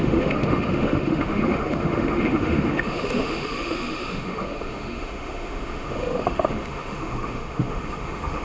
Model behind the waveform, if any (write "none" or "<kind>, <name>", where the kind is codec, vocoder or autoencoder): autoencoder, DAC-VAE